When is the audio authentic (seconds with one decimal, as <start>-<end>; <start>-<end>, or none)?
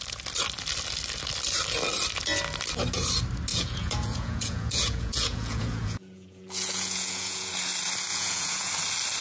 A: 0.0-3.5; 7.5-8.1; 8.7-9.2